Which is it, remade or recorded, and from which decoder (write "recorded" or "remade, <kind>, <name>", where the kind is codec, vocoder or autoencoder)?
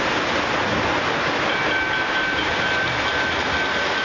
recorded